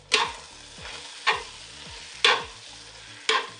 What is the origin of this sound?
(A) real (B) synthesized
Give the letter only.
A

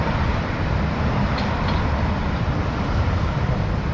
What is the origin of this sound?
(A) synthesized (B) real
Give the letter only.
B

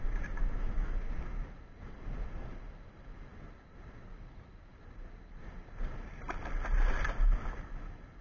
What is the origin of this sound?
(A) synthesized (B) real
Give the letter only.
B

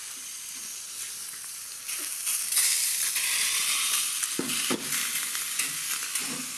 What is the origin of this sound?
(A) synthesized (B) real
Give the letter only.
B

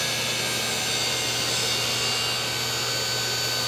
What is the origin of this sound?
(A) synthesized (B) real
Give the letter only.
B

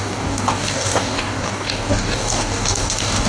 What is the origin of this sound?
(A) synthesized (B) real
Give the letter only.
A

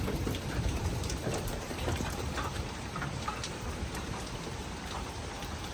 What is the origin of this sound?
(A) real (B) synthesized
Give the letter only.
B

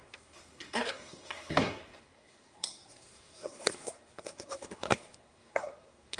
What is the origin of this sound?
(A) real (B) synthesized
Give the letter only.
B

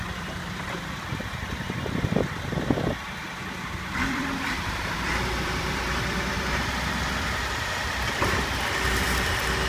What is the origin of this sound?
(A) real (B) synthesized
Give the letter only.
B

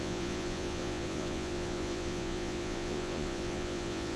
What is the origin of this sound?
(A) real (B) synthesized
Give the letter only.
B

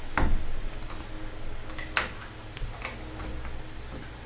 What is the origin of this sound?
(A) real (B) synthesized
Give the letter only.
A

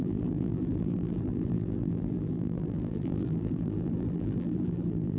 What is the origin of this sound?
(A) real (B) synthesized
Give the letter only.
B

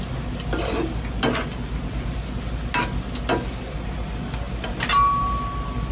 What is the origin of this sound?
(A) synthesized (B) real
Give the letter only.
B